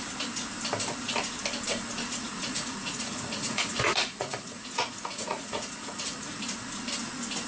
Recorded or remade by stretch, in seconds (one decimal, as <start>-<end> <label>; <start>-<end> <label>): 0.0-1.9 recorded; 1.9-6.4 remade; 6.4-7.5 recorded